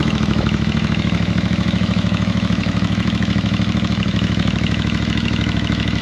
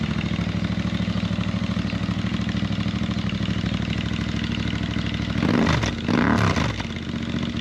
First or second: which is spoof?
first